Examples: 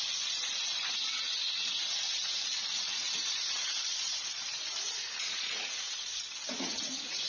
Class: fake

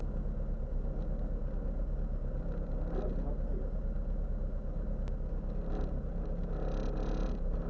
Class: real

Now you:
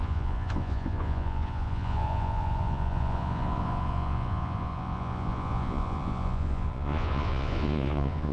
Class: fake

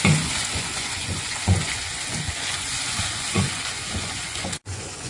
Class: fake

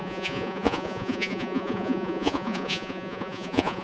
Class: fake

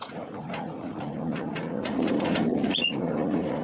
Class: fake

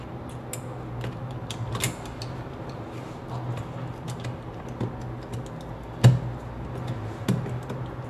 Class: real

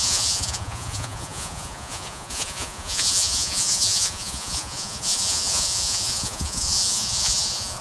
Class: fake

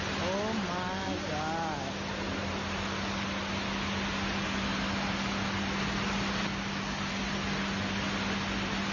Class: real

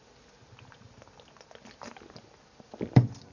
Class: real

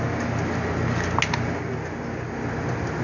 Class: real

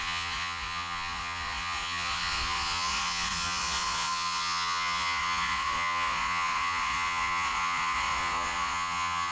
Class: fake